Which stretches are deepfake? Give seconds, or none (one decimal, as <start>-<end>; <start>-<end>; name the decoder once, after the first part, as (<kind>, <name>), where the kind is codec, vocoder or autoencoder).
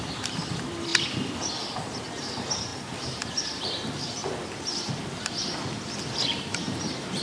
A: 0.0-0.9 (vocoder, BigVGAN v2); 2.2-2.7; 3.3-4.2; 6.2-7.2